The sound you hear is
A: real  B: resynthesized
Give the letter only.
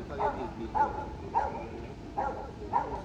A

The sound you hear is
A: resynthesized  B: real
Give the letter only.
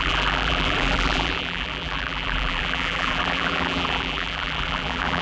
A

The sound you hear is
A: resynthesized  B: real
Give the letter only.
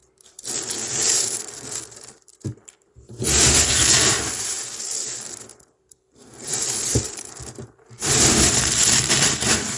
A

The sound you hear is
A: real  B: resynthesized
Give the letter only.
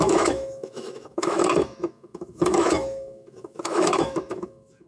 B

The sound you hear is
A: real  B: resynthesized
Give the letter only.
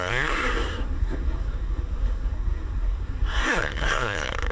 B